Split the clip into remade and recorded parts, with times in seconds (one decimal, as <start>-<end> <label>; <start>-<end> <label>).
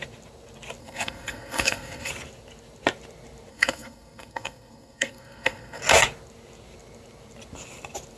0.0-0.8 recorded; 0.8-2.1 remade; 2.1-3.5 recorded; 3.5-5.8 remade; 5.8-8.2 recorded